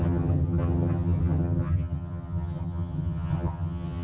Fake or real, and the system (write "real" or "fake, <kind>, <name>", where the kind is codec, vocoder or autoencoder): fake, vocoder, HiFi-GAN